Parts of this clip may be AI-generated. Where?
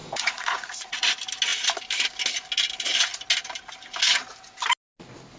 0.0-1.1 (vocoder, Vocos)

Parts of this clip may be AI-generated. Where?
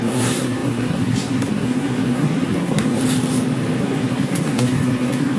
0.0-3.0 (codec, SNAC); 3.8-5.4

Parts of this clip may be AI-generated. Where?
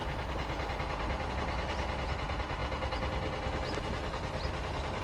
none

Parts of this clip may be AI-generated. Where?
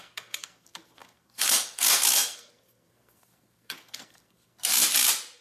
0.0-4.8 (codec, SNAC)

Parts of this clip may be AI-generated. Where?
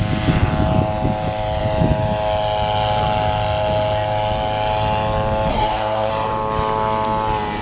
5.5-6.1 (codec, SNAC)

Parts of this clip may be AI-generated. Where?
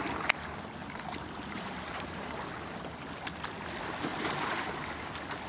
0.8-2.4 (vocoder, BigVGAN v2); 4.1-4.7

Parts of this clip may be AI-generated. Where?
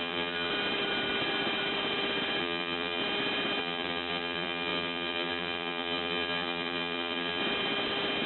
0.0-0.5 (vocoder, BigVGAN v2); 2.4-3.0; 3.6-7.4